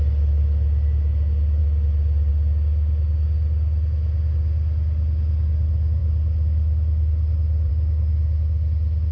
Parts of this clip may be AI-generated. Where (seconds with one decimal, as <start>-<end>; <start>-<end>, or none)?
none